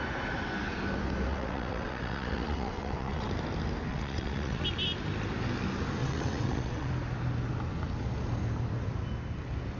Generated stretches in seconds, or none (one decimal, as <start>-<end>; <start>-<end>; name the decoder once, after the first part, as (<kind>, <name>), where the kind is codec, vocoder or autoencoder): 1.3-3.3 (vocoder, WaveNeXt); 3.9-4.6; 6.0-6.9